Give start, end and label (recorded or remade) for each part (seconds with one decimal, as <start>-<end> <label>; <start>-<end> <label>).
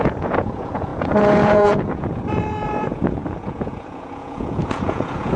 0.0-5.4 remade